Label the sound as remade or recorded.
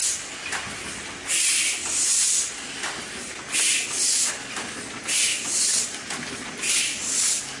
recorded